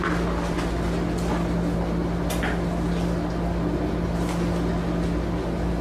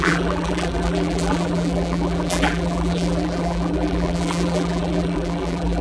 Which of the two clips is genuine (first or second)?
first